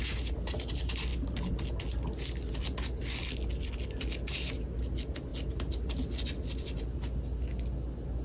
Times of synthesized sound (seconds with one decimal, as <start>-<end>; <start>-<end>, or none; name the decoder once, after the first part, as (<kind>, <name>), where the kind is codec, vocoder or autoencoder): none